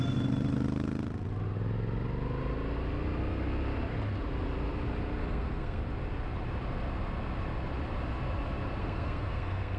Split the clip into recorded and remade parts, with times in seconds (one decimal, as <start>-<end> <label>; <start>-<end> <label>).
0.0-5.2 recorded; 5.2-5.8 remade; 5.8-8.8 recorded; 8.8-9.8 remade